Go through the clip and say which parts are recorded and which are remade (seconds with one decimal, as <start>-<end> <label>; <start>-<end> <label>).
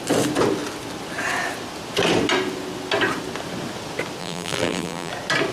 0.0-4.2 recorded; 4.2-5.1 remade; 5.1-5.5 recorded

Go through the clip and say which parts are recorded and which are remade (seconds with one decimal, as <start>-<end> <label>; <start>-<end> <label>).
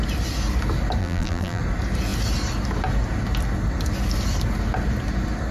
0.0-1.0 recorded; 1.0-1.6 remade; 1.6-5.5 recorded